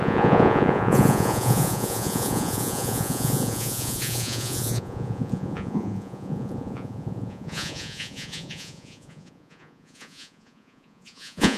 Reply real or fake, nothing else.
fake